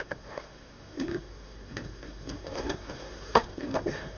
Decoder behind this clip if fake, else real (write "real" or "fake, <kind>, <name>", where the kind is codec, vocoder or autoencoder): fake, codec, SNAC